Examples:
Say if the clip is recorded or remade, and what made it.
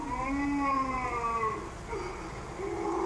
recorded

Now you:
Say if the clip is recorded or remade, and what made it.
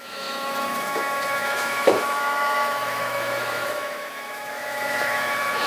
remade, autoencoder, DAC-VAE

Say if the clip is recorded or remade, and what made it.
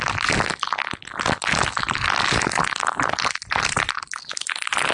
recorded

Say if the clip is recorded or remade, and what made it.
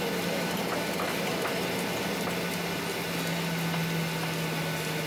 recorded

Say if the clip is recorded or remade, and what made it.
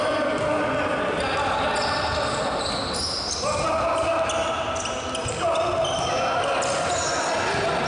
recorded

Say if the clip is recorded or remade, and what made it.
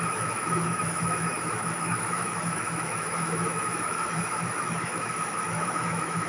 remade, autoencoder, DAC-VAE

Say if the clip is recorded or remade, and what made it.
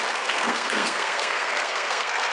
remade, codec, SNAC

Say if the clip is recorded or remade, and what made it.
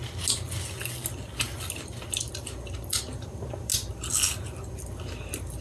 recorded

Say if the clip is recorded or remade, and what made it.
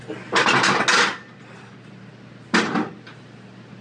recorded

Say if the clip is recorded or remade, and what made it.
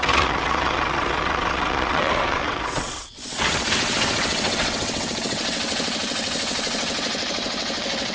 remade, vocoder, WaveNeXt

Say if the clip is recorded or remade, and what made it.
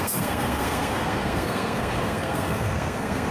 remade, codec, SNAC